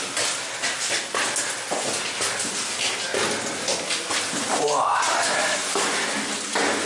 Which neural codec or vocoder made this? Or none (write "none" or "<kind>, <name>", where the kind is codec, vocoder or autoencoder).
none